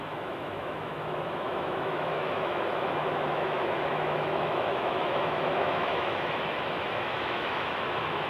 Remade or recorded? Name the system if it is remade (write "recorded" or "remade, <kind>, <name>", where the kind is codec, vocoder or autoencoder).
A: remade, autoencoder, DAC-VAE